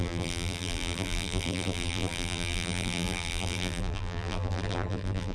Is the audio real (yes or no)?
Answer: no